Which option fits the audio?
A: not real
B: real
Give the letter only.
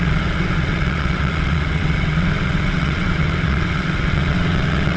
A